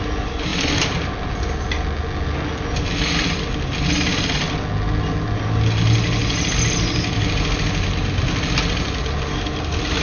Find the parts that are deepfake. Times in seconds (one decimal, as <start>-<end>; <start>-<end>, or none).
none